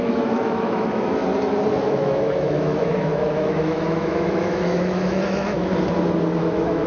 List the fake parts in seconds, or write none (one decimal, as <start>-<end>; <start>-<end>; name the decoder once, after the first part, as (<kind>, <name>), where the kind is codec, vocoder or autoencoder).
0.0-1.2 (autoencoder, DAC-VAE); 1.8-5.7; 6.4-6.9